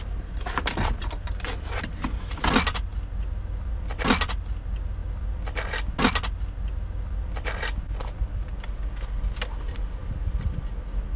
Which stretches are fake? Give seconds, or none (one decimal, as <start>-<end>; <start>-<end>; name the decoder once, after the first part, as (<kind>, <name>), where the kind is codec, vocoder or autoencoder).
none